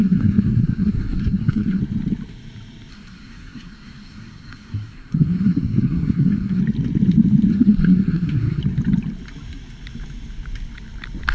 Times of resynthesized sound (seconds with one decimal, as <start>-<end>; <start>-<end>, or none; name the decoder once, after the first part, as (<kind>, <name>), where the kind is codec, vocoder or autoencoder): 0.0-1.8 (codec, SNAC); 2.9-6.6; 7.5-8.6